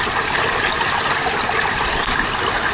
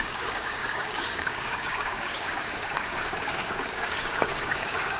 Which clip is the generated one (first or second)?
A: second